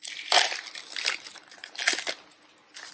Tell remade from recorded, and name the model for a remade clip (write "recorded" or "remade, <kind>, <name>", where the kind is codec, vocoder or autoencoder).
recorded